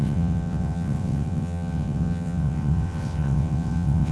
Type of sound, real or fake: fake